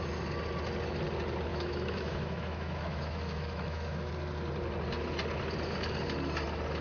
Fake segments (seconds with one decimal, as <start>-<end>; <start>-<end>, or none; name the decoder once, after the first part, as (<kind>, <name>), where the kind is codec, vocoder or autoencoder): 1.5-4.1 (autoencoder, DAC-VAE)